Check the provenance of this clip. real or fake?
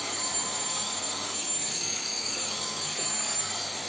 fake